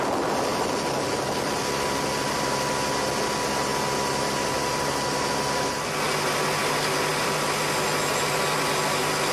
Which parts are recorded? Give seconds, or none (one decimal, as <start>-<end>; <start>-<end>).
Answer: 0.0-9.3